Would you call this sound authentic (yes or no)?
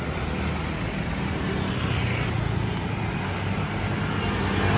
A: yes